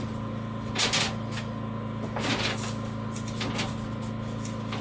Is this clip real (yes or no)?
yes